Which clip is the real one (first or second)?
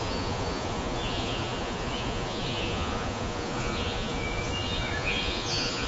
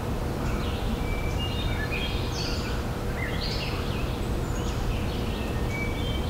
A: second